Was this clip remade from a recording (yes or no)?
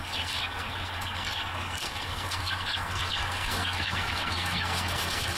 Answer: yes